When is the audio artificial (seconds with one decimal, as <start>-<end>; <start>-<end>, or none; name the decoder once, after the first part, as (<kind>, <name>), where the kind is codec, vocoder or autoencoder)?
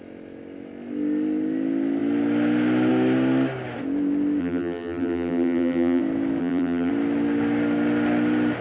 4.4-6.0 (vocoder, BigVGAN v2); 6.4-6.9